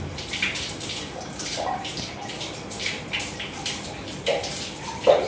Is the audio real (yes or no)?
yes